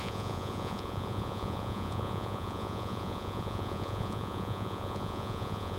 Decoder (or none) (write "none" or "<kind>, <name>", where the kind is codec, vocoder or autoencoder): vocoder, Vocos